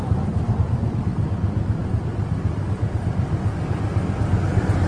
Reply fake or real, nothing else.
real